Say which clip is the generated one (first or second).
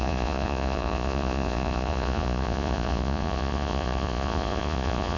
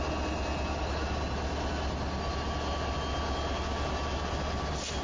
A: first